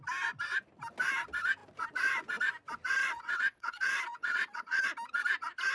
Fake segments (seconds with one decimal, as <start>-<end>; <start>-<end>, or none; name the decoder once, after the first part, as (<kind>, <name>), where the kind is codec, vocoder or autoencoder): 3.0-4.9 (vocoder, WaveNeXt)